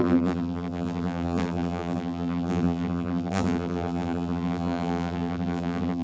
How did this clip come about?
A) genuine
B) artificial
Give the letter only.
B